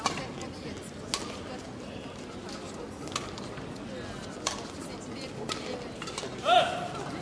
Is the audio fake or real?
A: real